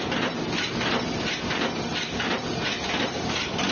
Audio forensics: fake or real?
real